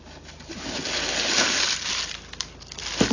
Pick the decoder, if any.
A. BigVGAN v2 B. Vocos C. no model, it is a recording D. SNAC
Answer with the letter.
C